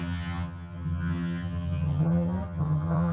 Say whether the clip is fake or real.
fake